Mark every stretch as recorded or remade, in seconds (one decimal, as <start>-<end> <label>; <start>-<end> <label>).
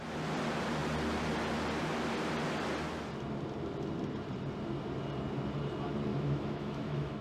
0.0-6.1 recorded; 6.1-7.2 remade